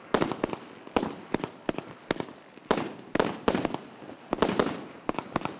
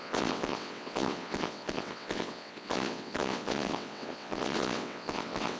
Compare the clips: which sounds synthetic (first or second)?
second